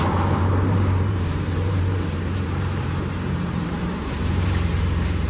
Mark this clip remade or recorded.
remade